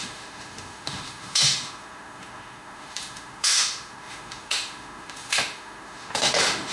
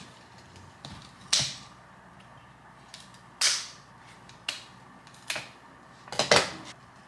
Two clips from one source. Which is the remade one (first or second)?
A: first